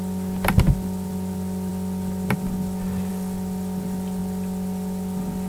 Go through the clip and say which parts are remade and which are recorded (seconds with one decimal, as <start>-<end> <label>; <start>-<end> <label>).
0.0-5.5 recorded